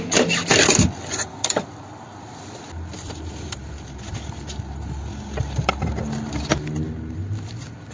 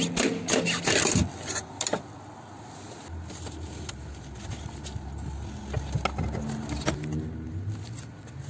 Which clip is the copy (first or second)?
first